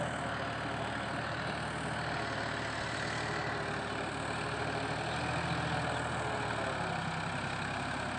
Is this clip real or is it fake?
real